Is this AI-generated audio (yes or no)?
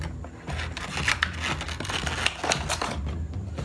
no